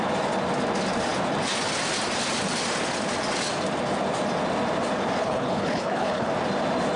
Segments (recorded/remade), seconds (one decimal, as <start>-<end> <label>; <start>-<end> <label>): 0.0-5.2 recorded; 5.2-6.3 remade; 6.3-7.0 recorded